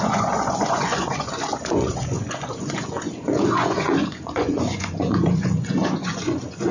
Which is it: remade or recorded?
remade